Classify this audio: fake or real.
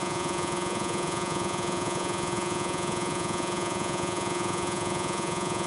fake